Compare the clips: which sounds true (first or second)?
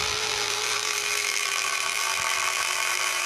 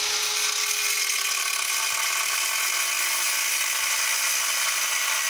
second